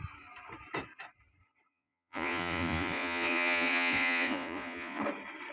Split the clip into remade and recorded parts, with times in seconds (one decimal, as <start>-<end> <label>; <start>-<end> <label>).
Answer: 0.0-1.7 recorded; 1.7-5.0 remade; 5.0-5.5 recorded